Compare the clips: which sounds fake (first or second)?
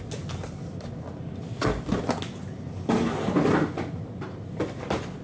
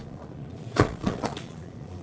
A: second